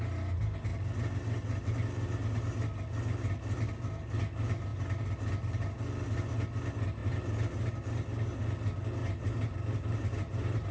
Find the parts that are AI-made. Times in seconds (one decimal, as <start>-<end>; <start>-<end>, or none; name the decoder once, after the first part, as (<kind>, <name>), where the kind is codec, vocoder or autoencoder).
7.0-7.7 (vocoder, BigVGAN v2); 9.0-10.7